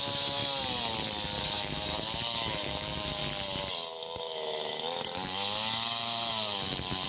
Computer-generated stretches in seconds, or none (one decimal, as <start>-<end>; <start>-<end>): 0.0-0.4; 1.4-3.2; 4.2-7.1